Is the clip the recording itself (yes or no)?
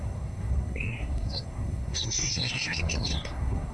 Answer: no